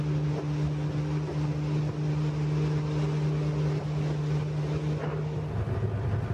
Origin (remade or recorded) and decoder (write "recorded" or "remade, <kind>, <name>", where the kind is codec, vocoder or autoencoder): recorded